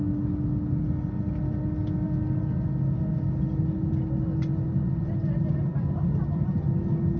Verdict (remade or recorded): recorded